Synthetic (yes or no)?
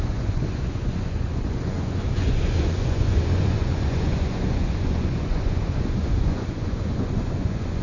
yes